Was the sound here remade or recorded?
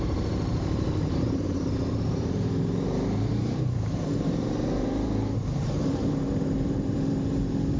remade